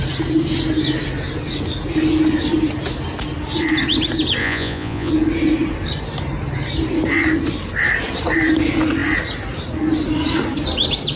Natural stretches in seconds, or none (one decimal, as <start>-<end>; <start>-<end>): 0.0-4.4; 5.1-11.2